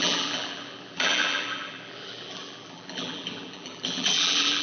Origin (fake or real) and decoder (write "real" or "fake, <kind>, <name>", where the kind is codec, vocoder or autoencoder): fake, vocoder, BigVGAN v2